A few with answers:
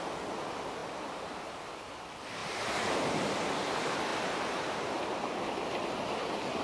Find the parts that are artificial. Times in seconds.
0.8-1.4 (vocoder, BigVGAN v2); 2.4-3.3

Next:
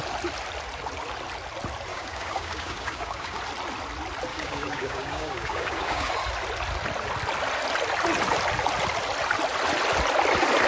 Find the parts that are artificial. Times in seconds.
1.9-3.4 (codec, DAC); 4.3-6.1

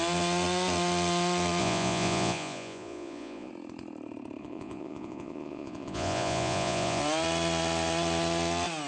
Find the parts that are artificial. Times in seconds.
1.6-3.5 (vocoder, Vocos); 4.4-7.0

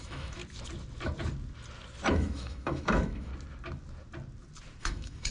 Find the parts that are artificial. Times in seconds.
0.0-0.4 (autoencoder, DAC-VAE); 2.1-3.3; 4.8-5.3

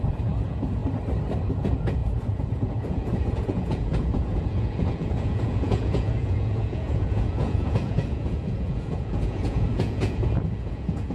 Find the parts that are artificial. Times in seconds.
0.0-0.8 (vocoder, Vocos); 1.5-11.1

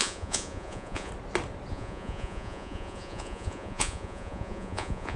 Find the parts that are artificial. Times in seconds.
0.0-1.1 (vocoder, Vocos); 1.7-5.2

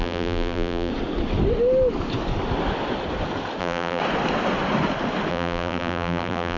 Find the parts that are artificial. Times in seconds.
0.0-0.9 (vocoder, BigVGAN v2); 3.6-4.0; 5.3-6.6